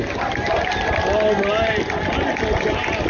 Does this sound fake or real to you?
real